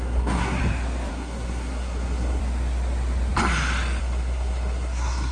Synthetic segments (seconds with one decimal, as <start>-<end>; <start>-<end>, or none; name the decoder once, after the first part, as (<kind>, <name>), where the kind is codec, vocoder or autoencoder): 0.0-0.6 (codec, SNAC); 1.1-2.4; 4.0-5.3